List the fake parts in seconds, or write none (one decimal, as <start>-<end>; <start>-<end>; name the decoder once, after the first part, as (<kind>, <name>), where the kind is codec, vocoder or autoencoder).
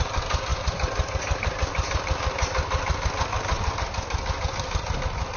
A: none